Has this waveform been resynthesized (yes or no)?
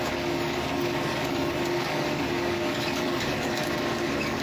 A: yes